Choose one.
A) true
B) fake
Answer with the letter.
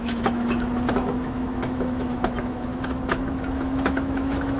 B